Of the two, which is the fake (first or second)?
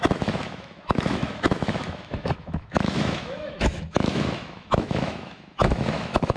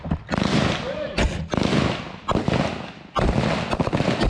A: first